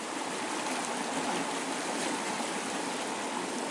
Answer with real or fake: real